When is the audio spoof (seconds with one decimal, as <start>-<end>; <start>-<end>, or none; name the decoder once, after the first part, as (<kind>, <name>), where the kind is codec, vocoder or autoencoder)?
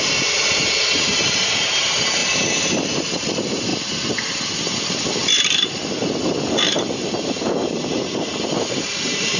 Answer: 0.0-2.2 (vocoder, BigVGAN v2); 2.7-3.7; 4.6-5.8; 6.5-9.4